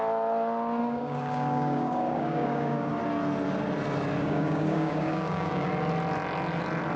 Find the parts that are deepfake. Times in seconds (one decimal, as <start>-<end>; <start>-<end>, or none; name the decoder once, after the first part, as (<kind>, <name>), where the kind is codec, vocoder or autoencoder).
0.8-2.9 (codec, DAC); 4.2-5.7